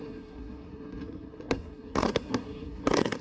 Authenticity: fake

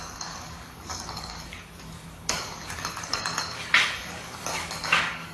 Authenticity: fake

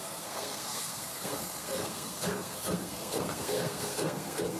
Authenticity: fake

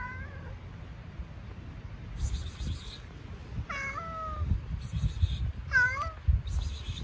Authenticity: real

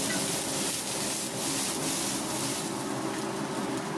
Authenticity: real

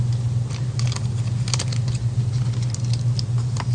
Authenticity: real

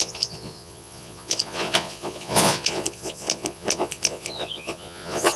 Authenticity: fake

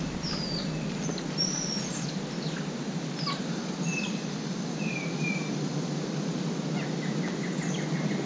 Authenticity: real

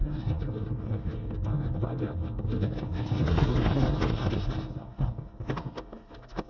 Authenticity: fake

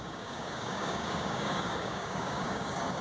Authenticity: fake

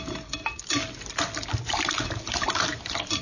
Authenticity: real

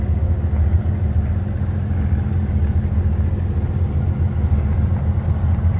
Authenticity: real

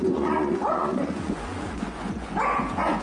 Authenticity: fake